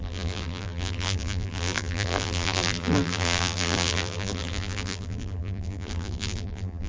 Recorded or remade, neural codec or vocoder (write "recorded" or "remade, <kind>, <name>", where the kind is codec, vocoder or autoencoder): remade, vocoder, BigVGAN v2